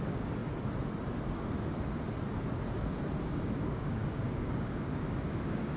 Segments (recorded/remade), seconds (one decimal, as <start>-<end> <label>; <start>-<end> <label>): 0.0-0.4 remade; 0.4-3.2 recorded; 3.2-5.8 remade